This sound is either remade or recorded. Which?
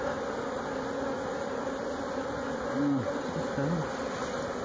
recorded